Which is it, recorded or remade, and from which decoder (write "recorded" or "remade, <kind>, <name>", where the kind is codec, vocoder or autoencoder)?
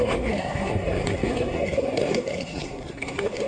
remade, codec, SNAC